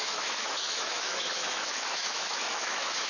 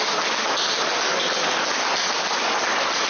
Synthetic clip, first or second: first